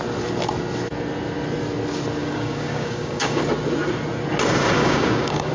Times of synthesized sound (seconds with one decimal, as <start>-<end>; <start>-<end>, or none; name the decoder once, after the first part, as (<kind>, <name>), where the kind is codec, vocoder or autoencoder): 2.2-3.4 (codec, DAC); 4.6-5.5